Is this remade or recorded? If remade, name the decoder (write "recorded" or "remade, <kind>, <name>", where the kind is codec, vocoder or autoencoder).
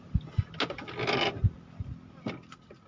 recorded